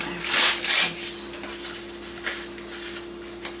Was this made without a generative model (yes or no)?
yes